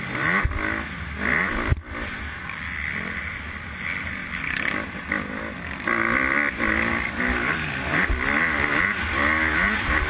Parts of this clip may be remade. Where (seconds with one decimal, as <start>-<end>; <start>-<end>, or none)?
none